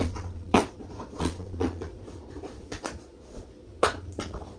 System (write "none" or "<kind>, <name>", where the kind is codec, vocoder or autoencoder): vocoder, Vocos